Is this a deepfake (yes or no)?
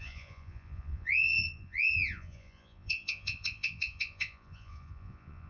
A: yes